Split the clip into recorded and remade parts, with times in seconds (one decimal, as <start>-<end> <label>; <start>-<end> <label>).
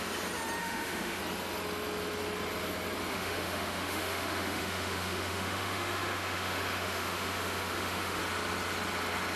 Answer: 0.0-0.6 recorded; 0.6-1.2 remade; 1.2-3.1 recorded; 3.1-8.2 remade; 8.2-9.4 recorded